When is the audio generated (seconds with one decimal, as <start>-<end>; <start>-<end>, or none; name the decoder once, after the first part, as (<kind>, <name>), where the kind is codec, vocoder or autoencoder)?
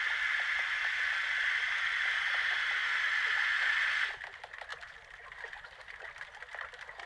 none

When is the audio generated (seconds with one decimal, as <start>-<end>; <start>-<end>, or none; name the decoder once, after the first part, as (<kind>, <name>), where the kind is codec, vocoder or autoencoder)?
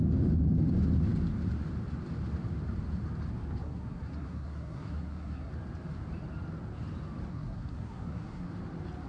3.6-5.5 (codec, SNAC); 7.3-8.5